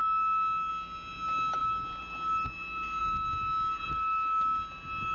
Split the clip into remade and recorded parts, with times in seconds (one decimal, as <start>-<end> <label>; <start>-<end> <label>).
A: 0.0-5.1 recorded